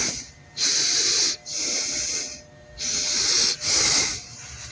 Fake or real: real